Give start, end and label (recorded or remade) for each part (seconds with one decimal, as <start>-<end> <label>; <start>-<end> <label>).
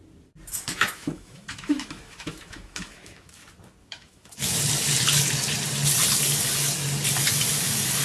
0.0-0.5 recorded; 0.5-3.4 remade; 3.4-3.8 recorded; 3.8-4.6 remade; 4.6-8.0 recorded